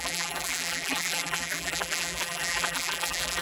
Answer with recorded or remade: remade